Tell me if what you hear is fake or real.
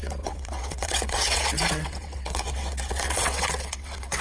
fake